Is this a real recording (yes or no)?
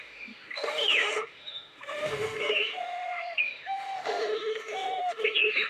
no